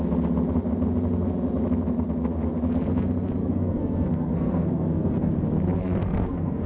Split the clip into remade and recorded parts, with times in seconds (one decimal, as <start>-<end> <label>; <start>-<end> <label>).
0.0-3.4 recorded; 3.4-5.3 remade; 5.3-5.8 recorded; 5.8-6.7 remade